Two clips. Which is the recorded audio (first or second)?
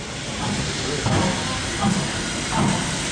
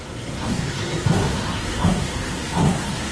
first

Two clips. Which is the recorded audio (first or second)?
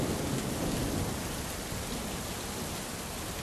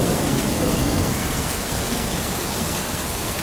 first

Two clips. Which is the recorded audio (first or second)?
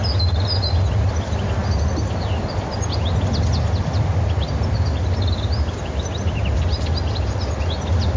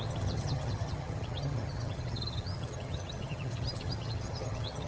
first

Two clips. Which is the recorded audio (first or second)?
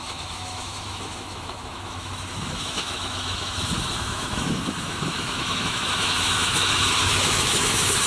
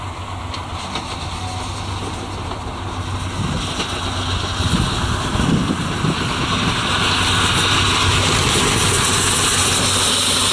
second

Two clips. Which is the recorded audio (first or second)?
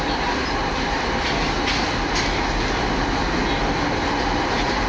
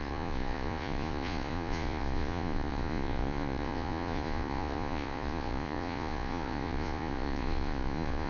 first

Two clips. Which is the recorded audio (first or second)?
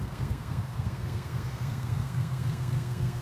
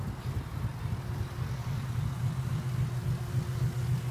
second